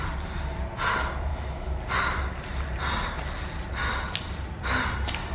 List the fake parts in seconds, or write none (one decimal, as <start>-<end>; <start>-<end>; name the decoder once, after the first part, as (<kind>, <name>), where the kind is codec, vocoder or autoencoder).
1.3-1.8 (autoencoder, DAC-VAE)